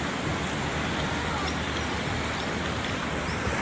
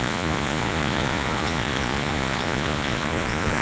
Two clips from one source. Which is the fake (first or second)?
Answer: second